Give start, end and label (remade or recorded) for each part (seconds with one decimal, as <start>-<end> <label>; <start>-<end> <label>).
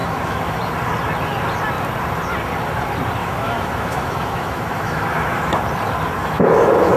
0.0-0.6 remade; 0.6-3.2 recorded; 3.2-5.6 remade; 5.6-6.2 recorded; 6.2-7.0 remade